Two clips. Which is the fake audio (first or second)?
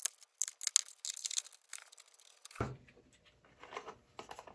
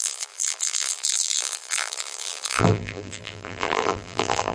second